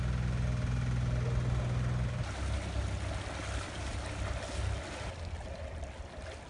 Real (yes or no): yes